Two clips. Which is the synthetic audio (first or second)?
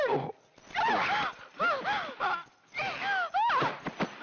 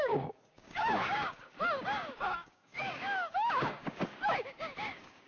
second